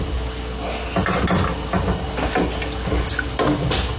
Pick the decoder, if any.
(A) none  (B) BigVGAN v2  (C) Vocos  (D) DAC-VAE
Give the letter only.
A